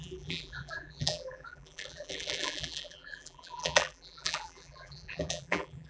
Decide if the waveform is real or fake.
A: fake